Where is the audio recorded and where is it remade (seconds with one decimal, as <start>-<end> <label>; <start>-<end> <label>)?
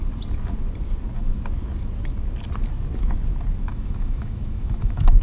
0.0-3.7 recorded; 3.7-5.2 remade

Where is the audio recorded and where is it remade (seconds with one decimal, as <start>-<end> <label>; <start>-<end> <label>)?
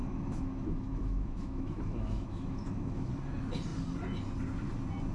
0.0-3.1 remade; 3.1-5.1 recorded